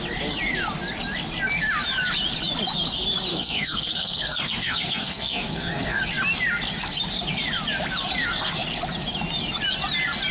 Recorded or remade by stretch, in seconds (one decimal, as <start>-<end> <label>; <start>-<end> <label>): 0.0-3.3 recorded; 3.3-6.0 remade; 6.0-10.3 recorded

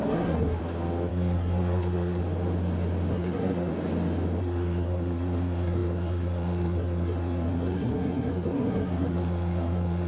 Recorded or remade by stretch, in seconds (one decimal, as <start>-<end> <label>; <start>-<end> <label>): 0.0-0.6 remade; 0.6-1.1 recorded; 1.1-2.2 remade; 2.2-3.1 recorded; 3.1-3.7 remade; 3.7-4.4 recorded; 4.4-10.1 remade